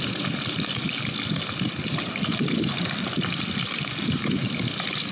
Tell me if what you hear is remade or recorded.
recorded